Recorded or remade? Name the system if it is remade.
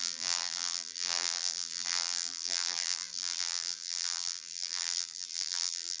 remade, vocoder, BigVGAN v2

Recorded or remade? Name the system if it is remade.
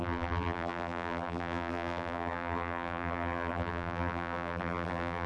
remade, vocoder, BigVGAN v2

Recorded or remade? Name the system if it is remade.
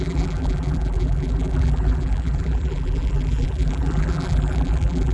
remade, vocoder, BigVGAN v2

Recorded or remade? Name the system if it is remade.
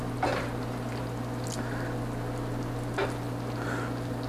recorded